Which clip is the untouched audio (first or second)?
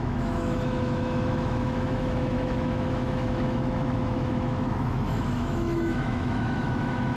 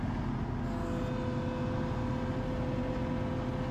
second